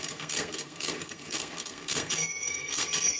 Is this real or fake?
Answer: fake